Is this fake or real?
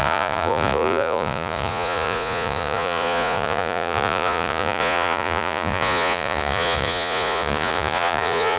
fake